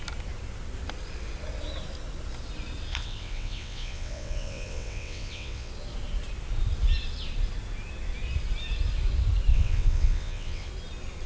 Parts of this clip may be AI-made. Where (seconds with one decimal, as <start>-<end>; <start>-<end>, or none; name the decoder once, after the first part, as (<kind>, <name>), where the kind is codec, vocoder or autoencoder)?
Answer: 2.9-5.7 (vocoder, WaveNeXt); 9.5-10.7